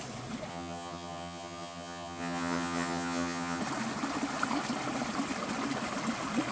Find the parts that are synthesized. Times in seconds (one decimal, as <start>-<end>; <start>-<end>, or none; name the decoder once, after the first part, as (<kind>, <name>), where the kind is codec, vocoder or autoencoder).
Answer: 0.5-3.6 (vocoder, HiFi-GAN)